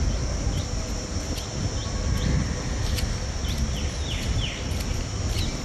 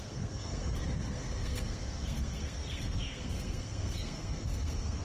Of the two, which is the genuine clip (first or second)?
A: first